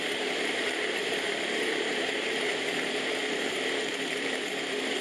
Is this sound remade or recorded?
remade